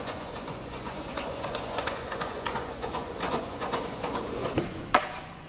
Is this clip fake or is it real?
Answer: fake